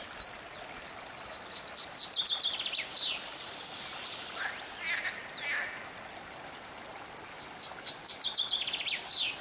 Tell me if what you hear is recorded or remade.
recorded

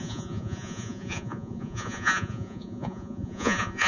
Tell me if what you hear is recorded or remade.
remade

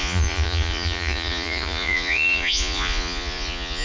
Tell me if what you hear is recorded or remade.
remade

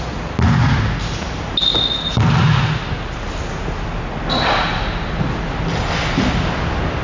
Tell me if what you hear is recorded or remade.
recorded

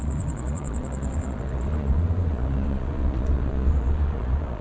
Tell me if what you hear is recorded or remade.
remade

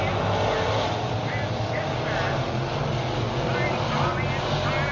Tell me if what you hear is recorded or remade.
recorded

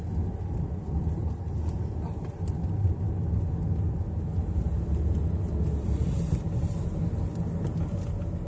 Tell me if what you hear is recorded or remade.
recorded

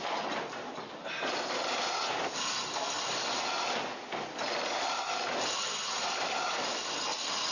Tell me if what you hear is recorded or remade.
recorded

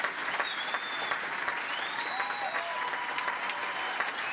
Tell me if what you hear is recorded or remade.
recorded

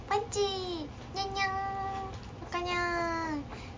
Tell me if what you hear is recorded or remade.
recorded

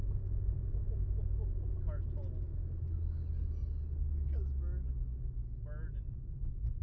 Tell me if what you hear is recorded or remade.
recorded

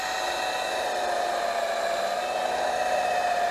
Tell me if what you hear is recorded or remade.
recorded